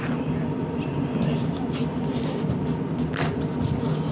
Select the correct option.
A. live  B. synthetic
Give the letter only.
A